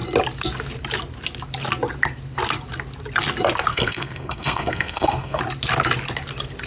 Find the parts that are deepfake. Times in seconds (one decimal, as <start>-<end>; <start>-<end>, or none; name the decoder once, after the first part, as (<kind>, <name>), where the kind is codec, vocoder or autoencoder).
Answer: 3.7-5.4 (codec, SNAC)